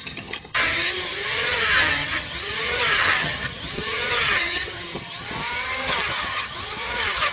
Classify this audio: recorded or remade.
remade